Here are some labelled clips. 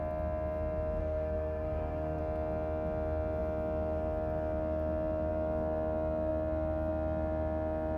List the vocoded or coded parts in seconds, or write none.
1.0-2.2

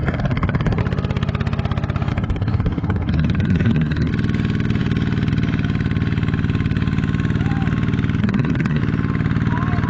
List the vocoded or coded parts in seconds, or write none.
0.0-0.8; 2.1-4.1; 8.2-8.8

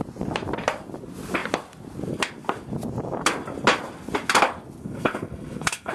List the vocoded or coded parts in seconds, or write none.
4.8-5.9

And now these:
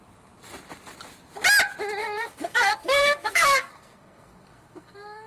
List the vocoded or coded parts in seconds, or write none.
2.0-5.3

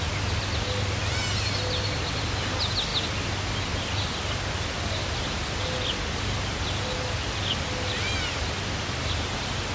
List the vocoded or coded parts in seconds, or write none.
none

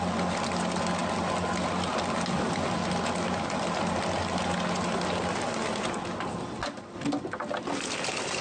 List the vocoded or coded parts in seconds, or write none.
none